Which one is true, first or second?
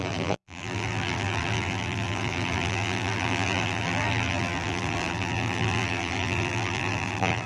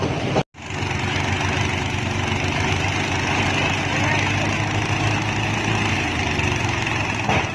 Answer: second